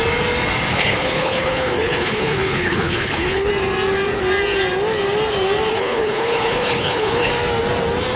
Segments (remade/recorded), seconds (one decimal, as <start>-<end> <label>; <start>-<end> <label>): 0.0-0.7 recorded; 0.7-3.5 remade; 3.5-5.7 recorded; 5.7-7.3 remade; 7.3-8.2 recorded